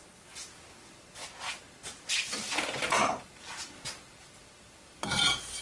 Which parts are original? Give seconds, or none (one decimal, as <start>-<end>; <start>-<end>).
0.0-5.6